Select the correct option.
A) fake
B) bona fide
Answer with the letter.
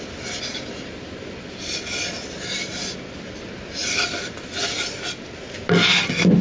B